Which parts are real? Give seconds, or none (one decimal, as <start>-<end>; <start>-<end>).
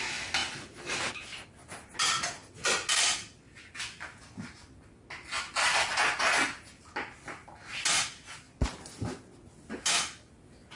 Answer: 0.0-10.8